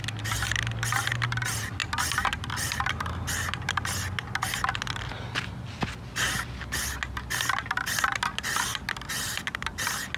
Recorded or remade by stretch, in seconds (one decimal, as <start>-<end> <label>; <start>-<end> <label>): 0.0-10.2 recorded

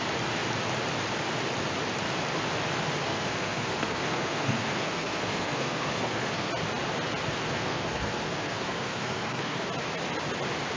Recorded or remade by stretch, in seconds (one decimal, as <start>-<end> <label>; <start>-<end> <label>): 0.0-3.1 recorded; 3.1-6.5 remade; 6.5-7.4 recorded; 7.4-9.6 remade; 9.6-10.8 recorded

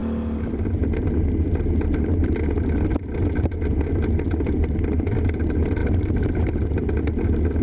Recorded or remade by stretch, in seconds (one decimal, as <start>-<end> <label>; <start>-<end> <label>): 0.0-7.6 recorded